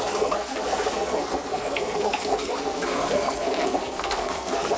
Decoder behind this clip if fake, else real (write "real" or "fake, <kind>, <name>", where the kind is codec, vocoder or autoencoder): fake, codec, SNAC